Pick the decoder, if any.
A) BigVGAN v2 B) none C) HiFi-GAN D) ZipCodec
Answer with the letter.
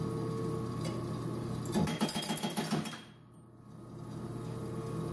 B